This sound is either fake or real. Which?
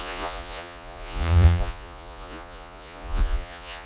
fake